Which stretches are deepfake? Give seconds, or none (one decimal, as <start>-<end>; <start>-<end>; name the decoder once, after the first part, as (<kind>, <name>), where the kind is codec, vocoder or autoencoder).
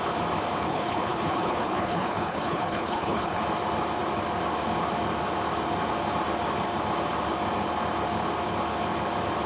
0.7-3.4 (codec, HILCodec)